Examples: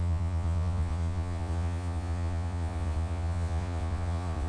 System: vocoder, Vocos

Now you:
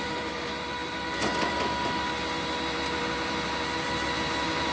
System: vocoder, BigVGAN v2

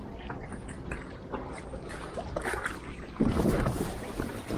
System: none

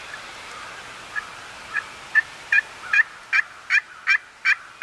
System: none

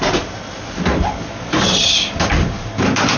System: none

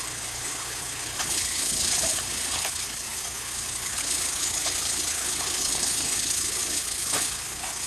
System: codec, HILCodec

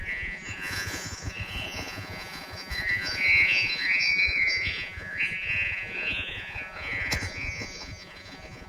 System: vocoder, Vocos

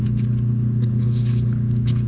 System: codec, HILCodec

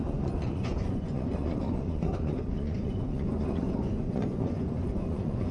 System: vocoder, Vocos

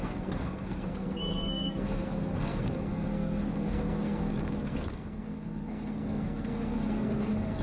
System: codec, SNAC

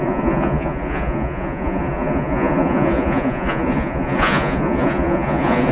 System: vocoder, Vocos